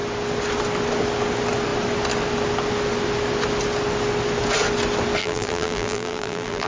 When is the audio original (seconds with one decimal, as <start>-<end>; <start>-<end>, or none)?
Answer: 0.0-5.2